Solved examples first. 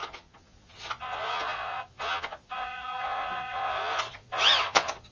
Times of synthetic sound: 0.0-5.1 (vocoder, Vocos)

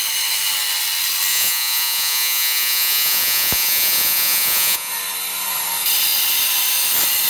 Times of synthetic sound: 1.3-4.9 (vocoder, Vocos)

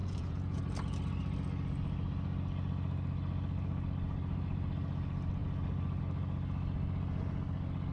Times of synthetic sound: 0.0-0.6 (vocoder, Vocos)

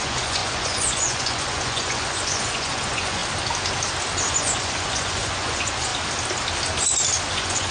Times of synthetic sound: 0.0-3.2 (vocoder, Vocos); 4.3-5.9; 7.3-7.7

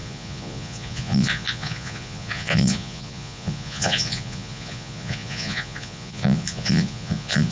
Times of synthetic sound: 0.0-7.5 (vocoder, Vocos)

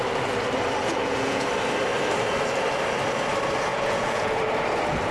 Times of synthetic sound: 0.8-1.5 (vocoder, Vocos); 3.7-4.4